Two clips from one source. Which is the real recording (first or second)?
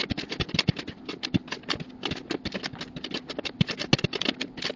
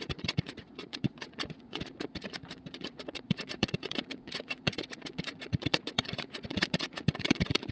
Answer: first